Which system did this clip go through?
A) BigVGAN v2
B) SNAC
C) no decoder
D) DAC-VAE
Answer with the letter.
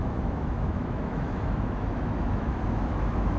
D